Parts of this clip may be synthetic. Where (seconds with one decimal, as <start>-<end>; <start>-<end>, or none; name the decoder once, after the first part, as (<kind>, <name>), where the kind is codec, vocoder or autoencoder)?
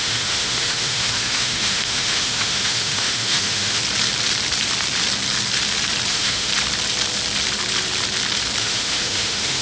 0.0-3.8 (autoencoder, DAC-VAE); 6.1-6.5; 8.6-9.6